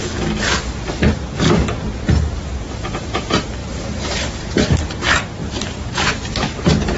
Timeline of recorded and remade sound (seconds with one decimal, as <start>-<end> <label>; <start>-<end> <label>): 0.0-3.6 recorded; 3.6-7.0 remade